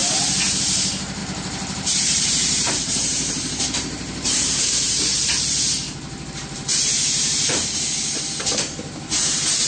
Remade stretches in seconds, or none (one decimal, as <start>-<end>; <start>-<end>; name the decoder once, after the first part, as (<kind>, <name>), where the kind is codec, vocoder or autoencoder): 0.0-5.1 (vocoder, BigVGAN v2); 6.3-9.7